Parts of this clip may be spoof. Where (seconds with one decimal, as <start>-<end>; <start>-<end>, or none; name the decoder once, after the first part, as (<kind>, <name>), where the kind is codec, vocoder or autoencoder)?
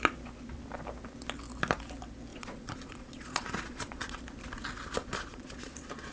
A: 2.3-4.2 (vocoder, Vocos); 5.0-6.1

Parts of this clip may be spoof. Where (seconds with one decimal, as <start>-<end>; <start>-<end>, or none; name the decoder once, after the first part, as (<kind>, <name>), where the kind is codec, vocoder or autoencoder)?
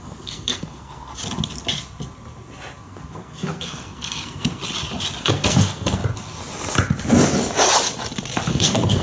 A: 0.0-1.1 (codec, SNAC); 2.8-4.6; 5.2-6.0; 8.5-9.0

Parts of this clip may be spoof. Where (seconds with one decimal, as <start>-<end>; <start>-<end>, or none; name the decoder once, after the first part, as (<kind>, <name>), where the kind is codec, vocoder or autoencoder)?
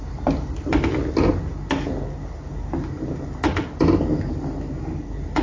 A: none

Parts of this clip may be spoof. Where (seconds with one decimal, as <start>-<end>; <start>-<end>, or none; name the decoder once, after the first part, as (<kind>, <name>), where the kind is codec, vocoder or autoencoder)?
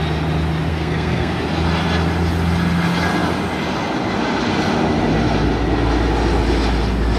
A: 0.7-1.4 (codec, SNAC)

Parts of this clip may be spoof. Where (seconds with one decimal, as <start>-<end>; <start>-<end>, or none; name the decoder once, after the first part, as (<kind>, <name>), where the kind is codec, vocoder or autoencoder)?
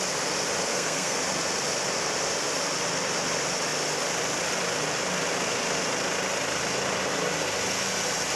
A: 0.7-1.2 (codec, SNAC)